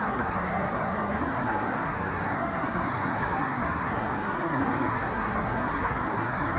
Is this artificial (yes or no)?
yes